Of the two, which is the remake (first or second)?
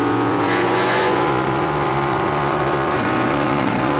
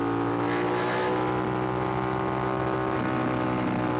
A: first